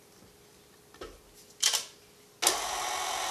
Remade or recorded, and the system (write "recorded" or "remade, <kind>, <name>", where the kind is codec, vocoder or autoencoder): recorded